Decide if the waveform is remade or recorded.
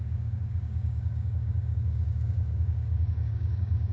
remade